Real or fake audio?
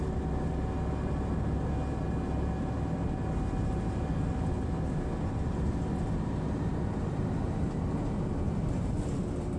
real